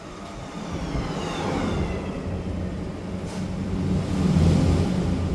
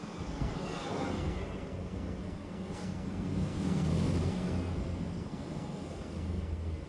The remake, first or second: second